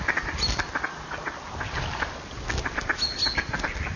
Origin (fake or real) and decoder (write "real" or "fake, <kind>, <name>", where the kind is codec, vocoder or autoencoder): real